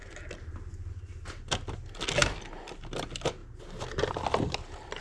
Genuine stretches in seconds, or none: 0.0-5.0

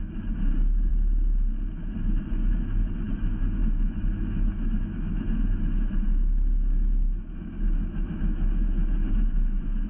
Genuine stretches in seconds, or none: 0.9-1.7